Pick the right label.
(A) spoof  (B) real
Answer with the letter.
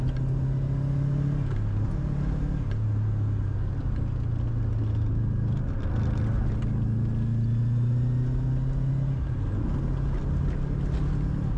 B